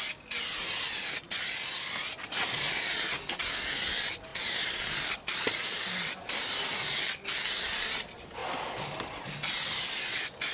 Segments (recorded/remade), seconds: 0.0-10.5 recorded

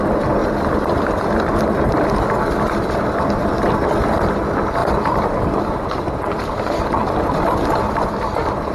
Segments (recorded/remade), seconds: 0.0-0.4 recorded; 0.4-2.0 remade; 2.0-4.8 recorded; 4.8-6.1 remade; 6.1-7.0 recorded; 7.0-7.7 remade; 7.7-8.7 recorded

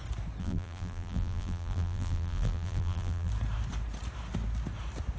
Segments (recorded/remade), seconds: 0.0-0.4 recorded; 0.4-3.3 remade; 3.3-5.2 recorded

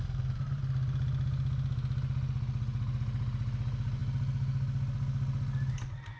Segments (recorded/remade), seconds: 0.0-6.2 recorded

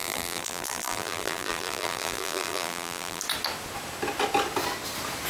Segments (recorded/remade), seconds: 0.0-3.2 remade; 3.2-5.3 recorded

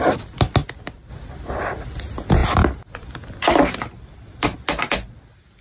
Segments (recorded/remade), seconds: 0.0-5.6 recorded

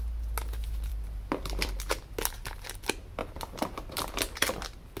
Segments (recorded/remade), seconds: 0.0-0.9 recorded; 0.9-1.7 remade; 1.7-3.2 recorded; 3.2-4.0 remade; 4.0-5.0 recorded

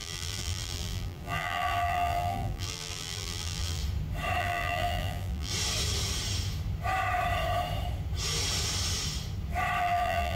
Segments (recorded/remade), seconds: 0.0-3.8 remade; 3.8-4.4 recorded; 4.4-5.5 remade; 5.5-9.8 recorded; 9.8-10.4 remade